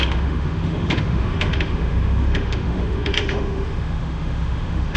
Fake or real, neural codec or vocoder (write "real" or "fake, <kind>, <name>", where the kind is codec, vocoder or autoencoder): fake, autoencoder, DAC-VAE